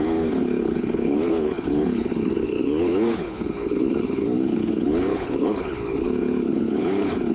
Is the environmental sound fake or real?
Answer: fake